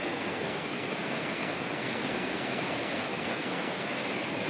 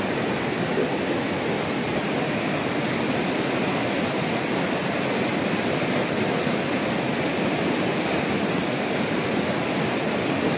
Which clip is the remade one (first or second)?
first